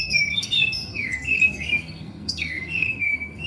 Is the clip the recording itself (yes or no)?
no